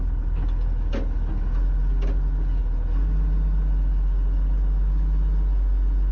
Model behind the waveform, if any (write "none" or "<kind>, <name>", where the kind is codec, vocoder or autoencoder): none